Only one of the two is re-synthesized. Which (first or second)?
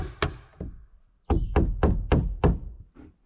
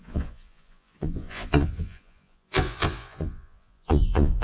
second